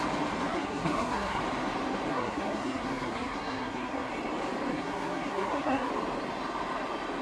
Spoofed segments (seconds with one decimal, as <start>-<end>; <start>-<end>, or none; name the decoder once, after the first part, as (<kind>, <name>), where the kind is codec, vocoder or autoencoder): 0.5-1.4 (codec, SNAC); 2.1-4.1; 4.7-5.9